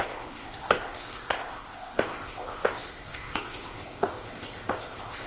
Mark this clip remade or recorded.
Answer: remade